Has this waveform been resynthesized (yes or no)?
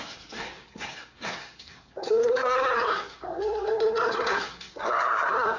yes